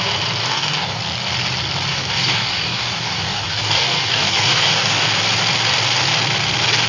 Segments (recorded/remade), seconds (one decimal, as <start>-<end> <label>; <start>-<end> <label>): 0.0-0.4 recorded; 0.4-1.0 remade; 1.0-1.9 recorded; 1.9-5.1 remade; 5.1-6.9 recorded